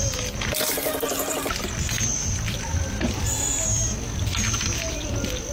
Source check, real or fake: fake